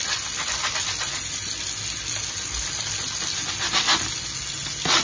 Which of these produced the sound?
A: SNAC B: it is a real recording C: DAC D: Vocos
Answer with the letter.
B